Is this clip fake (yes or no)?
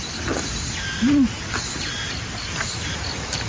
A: no